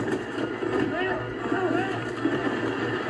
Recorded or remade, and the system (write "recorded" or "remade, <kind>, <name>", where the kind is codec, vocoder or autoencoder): recorded